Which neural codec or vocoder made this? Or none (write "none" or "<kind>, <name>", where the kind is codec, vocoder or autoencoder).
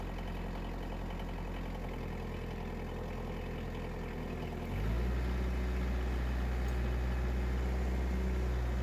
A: none